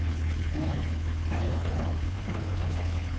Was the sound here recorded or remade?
remade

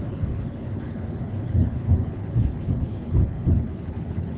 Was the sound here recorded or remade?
remade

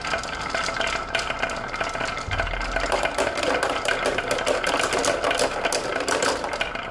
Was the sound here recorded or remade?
recorded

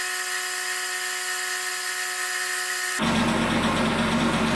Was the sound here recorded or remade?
recorded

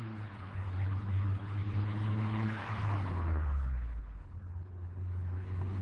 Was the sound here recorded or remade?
remade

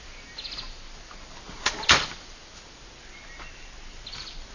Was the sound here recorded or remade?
recorded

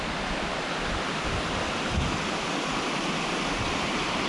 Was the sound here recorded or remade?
recorded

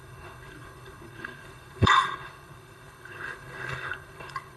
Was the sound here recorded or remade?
remade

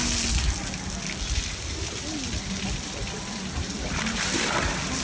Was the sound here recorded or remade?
recorded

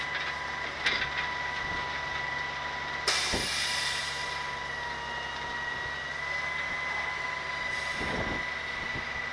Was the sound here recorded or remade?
recorded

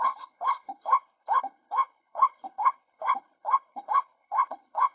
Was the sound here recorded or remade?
remade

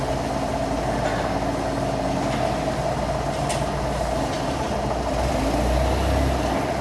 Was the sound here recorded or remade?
recorded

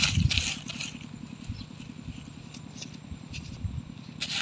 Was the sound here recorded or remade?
recorded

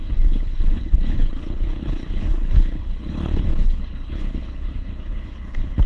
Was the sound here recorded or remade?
remade